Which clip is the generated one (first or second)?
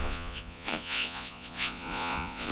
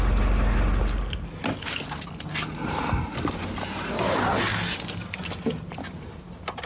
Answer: first